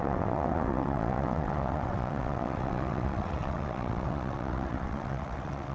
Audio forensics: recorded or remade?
remade